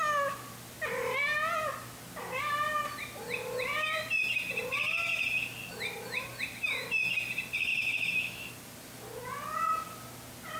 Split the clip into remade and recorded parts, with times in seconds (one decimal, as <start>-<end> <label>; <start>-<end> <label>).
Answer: 0.0-7.7 recorded; 7.7-8.5 remade; 8.5-10.6 recorded